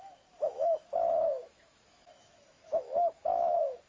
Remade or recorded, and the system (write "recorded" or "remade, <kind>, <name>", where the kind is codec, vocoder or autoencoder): remade, autoencoder, DAC-VAE